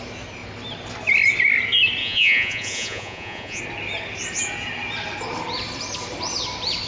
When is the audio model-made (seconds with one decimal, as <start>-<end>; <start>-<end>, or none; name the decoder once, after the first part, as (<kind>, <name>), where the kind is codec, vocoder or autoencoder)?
2.0-3.6 (vocoder, Vocos)